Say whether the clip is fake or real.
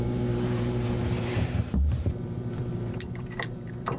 fake